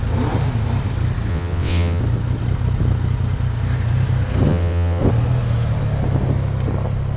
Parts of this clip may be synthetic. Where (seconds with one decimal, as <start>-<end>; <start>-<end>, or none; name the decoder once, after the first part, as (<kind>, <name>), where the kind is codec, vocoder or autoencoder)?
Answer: 1.3-2.0 (vocoder, WaveNeXt); 4.5-5.0